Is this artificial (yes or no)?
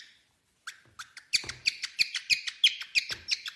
no